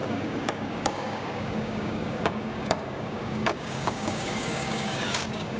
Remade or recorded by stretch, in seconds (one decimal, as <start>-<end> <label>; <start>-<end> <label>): 0.0-5.6 remade